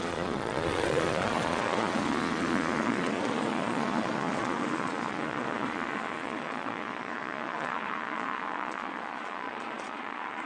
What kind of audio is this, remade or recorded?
remade